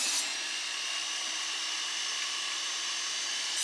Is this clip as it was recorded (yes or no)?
yes